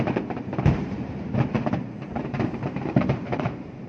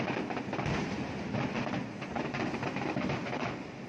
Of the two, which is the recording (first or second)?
second